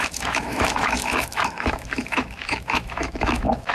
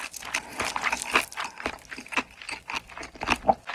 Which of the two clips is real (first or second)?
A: second